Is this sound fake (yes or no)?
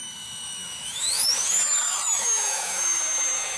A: yes